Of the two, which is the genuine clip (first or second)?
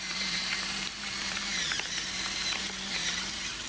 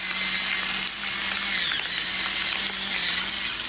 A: second